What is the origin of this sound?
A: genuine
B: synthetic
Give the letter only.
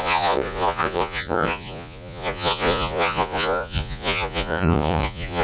B